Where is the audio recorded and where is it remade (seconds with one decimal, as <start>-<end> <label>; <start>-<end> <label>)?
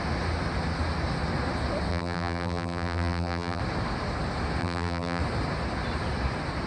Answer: 0.0-1.9 recorded; 1.9-3.6 remade; 3.6-4.6 recorded; 4.6-5.2 remade; 5.2-6.7 recorded